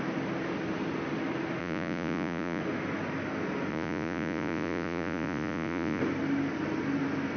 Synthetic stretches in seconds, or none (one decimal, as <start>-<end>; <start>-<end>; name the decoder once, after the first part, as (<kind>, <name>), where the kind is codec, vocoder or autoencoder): 1.6-2.6 (vocoder, Vocos); 3.7-6.0